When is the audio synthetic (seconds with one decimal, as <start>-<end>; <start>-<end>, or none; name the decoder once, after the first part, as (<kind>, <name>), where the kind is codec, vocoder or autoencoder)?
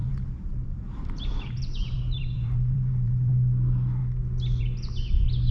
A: 0.0-3.3 (vocoder, BigVGAN v2)